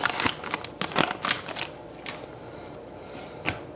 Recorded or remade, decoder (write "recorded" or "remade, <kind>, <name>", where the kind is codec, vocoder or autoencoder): recorded